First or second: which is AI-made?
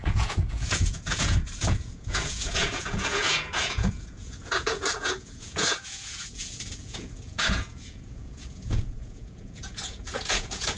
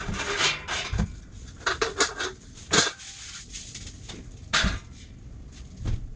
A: first